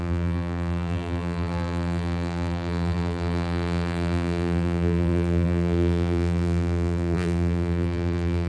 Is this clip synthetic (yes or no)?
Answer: yes